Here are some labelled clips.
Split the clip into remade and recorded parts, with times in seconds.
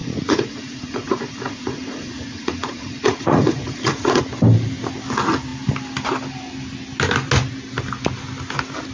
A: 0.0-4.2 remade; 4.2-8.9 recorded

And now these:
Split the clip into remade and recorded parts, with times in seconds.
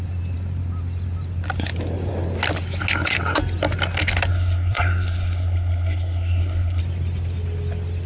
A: 0.0-4.3 recorded; 4.3-6.8 remade; 6.8-8.1 recorded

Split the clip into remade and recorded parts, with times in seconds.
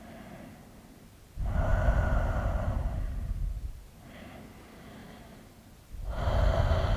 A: 0.0-7.0 recorded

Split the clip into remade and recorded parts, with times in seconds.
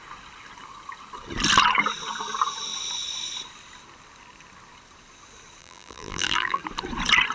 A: 0.0-5.6 recorded; 5.6-6.6 remade; 6.6-7.3 recorded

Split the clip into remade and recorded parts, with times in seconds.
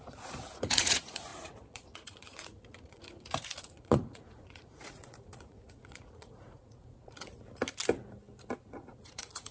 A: 0.0-7.3 remade; 7.3-8.7 recorded; 8.7-9.5 remade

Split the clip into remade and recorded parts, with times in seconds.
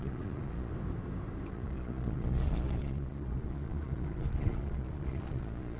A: 0.0-0.7 remade; 0.7-1.5 recorded; 1.5-5.8 remade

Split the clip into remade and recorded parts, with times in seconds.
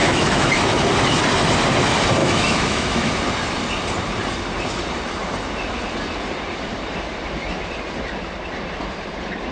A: 0.0-0.5 remade; 0.5-2.2 recorded; 2.2-3.1 remade; 3.1-9.5 recorded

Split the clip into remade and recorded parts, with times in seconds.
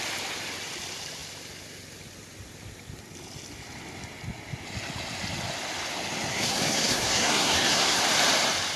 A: 0.0-6.3 recorded; 6.3-8.0 remade; 8.0-8.8 recorded